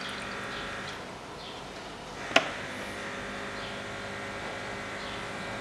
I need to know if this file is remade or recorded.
recorded